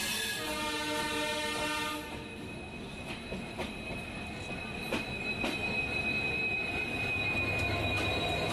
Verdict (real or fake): real